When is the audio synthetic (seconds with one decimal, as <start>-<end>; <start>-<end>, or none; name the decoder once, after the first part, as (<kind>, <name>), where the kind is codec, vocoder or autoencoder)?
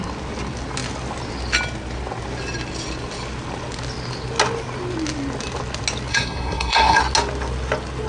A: 6.1-7.0 (codec, SNAC)